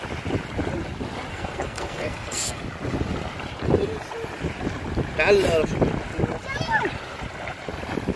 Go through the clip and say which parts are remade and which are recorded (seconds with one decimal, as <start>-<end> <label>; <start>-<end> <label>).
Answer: 0.0-1.3 recorded; 1.3-2.6 remade; 2.6-8.2 recorded